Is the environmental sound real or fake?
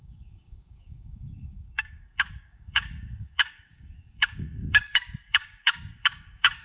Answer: fake